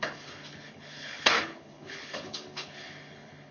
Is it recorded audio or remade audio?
remade